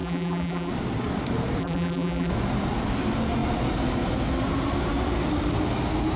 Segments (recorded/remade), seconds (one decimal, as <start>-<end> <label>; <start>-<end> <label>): 0.0-0.7 remade; 0.7-1.6 recorded; 1.6-2.3 remade; 2.3-6.2 recorded